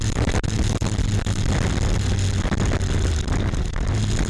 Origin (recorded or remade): recorded